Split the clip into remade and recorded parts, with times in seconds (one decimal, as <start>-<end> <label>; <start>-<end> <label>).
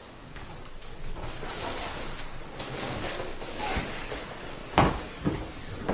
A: 0.0-5.9 remade